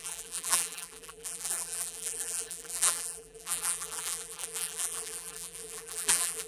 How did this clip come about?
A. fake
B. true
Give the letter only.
A